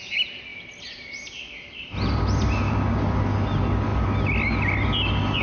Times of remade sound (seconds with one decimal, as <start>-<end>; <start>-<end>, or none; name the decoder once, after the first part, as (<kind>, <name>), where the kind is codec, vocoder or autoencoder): 0.5-2.7 (vocoder, BigVGAN v2)